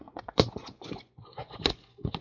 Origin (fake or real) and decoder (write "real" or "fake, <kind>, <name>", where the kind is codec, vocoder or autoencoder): fake, vocoder, Vocos